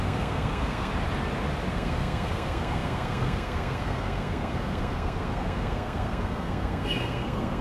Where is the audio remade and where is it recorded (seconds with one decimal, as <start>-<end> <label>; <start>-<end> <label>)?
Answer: 0.0-0.9 remade; 0.9-1.7 recorded; 1.7-7.6 remade